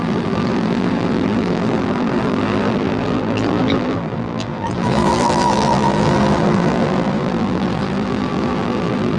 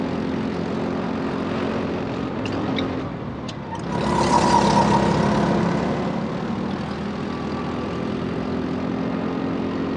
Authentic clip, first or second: second